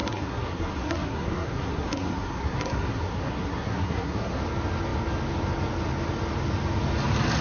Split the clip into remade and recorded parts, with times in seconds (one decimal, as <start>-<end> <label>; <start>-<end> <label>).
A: 0.0-4.4 remade; 4.4-7.4 recorded